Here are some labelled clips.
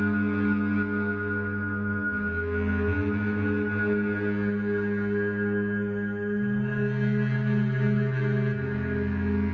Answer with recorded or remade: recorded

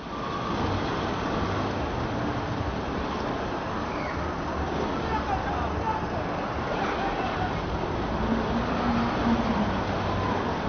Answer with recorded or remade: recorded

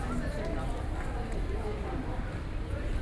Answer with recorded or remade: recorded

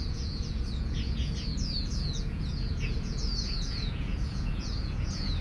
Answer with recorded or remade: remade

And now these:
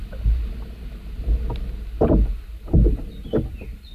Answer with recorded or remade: recorded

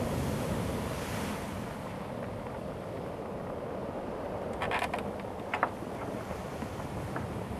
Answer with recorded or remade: recorded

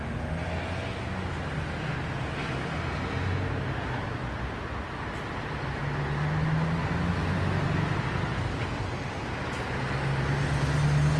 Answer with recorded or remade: recorded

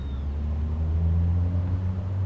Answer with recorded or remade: recorded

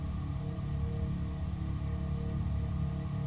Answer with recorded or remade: recorded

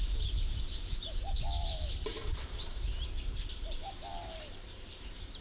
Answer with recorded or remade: remade